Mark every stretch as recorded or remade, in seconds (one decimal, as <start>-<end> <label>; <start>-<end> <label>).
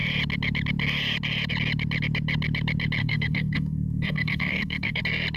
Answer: 0.0-3.0 recorded; 3.0-5.0 remade; 5.0-5.4 recorded